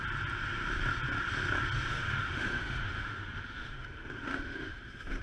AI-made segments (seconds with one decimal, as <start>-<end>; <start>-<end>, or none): 1.9-5.2